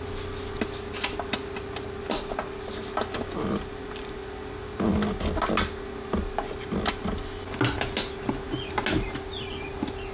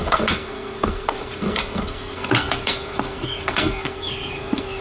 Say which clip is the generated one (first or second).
second